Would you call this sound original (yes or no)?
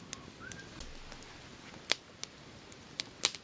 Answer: yes